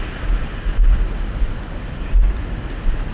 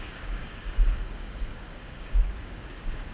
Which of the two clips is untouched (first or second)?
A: first